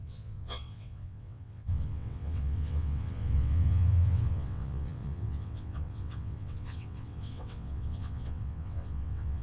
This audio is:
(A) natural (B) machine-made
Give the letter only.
B